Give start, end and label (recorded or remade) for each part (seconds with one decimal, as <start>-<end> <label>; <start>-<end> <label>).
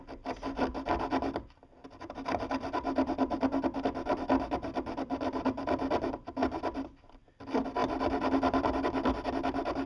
0.0-9.9 recorded